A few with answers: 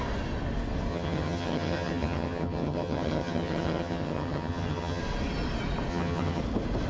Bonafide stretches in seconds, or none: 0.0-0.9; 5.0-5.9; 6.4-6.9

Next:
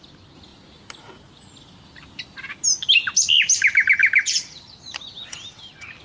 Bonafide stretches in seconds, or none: 0.0-6.0

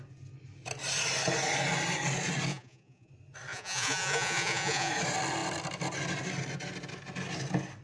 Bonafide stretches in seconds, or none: 0.0-2.5; 3.1-3.5; 4.9-7.8

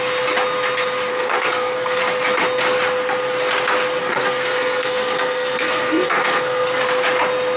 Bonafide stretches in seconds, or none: 0.0-1.1; 2.0-4.0; 6.8-7.6

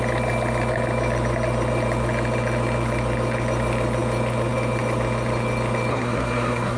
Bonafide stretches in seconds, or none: 0.0-5.9

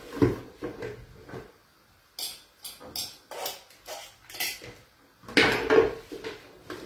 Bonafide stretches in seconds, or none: 1.6-5.7